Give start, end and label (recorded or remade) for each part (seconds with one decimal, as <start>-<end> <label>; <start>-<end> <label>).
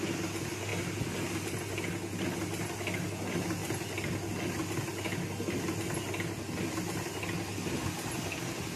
0.0-8.8 recorded